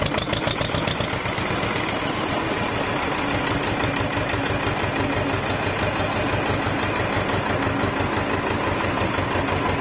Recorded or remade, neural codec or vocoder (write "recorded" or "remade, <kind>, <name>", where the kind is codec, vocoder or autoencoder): recorded